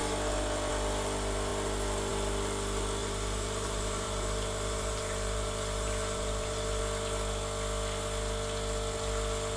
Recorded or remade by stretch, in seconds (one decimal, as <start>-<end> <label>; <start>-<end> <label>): 0.0-3.0 recorded; 3.0-6.8 remade; 6.8-9.6 recorded